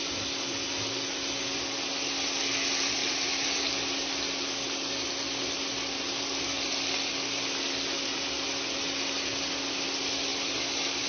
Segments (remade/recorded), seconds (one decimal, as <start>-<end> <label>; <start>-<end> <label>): 0.0-11.1 recorded